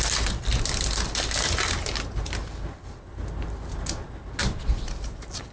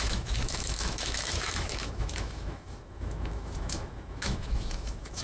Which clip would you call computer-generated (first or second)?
second